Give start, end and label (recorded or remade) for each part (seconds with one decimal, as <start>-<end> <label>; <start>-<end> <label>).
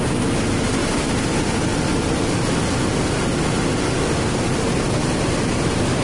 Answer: 0.0-0.8 recorded; 0.8-4.4 remade; 4.4-6.0 recorded